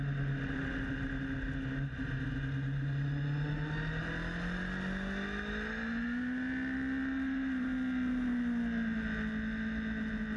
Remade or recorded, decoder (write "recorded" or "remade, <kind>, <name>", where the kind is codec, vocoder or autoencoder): recorded